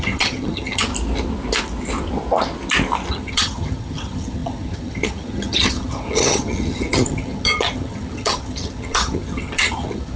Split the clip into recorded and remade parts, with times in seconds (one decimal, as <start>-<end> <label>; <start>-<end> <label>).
0.0-0.9 remade; 0.9-3.1 recorded; 3.1-10.2 remade